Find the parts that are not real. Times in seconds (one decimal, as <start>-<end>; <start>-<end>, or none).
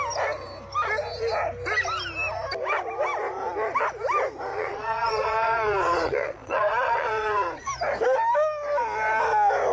4.5-7.7